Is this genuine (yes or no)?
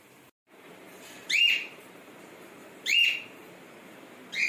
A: no